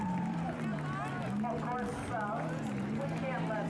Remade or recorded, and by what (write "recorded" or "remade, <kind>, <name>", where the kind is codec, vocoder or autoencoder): recorded